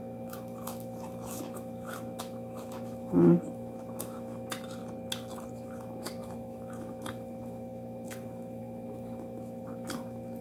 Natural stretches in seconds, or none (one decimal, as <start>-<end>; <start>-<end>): 4.8-5.5